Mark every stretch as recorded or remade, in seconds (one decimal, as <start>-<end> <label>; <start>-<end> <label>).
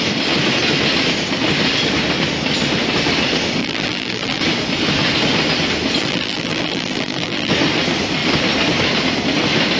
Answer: 0.0-3.6 recorded; 3.6-4.4 remade; 4.4-6.0 recorded; 6.0-7.5 remade; 7.5-9.8 recorded